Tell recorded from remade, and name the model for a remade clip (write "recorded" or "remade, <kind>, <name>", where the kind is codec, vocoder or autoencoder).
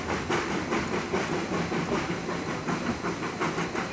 recorded